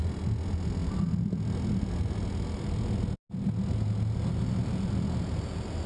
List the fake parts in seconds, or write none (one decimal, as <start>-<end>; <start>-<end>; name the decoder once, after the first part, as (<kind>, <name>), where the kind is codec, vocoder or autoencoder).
none